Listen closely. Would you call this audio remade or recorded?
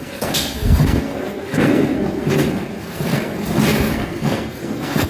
remade